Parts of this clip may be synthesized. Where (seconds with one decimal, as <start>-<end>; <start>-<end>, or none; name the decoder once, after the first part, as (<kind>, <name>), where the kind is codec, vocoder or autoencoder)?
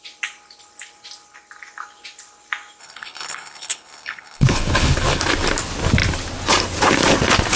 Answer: 2.8-5.2 (codec, HILCodec)